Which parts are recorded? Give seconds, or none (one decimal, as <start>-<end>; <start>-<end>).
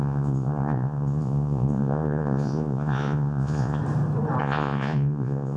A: 3.8-4.4